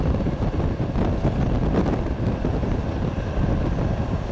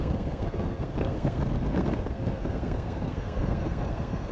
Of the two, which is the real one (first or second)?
first